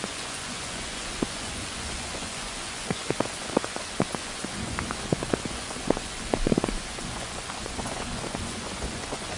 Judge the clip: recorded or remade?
remade